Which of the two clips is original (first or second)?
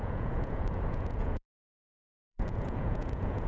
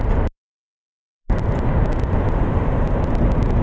second